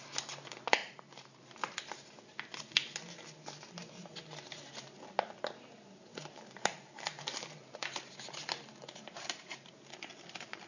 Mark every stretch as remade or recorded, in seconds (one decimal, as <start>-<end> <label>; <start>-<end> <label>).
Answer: 0.0-0.8 recorded; 0.8-1.4 remade; 1.4-6.1 recorded; 6.1-9.7 remade; 9.7-10.7 recorded